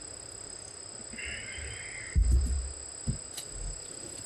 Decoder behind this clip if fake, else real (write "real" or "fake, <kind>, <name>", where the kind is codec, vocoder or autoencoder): real